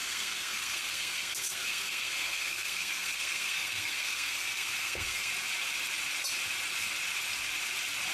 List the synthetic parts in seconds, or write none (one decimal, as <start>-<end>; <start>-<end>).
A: 0.0-5.3